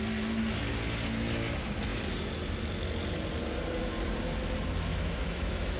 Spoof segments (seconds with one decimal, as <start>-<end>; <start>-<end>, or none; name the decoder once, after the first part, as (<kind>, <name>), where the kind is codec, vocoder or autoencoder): 4.9-5.8 (autoencoder, DAC-VAE)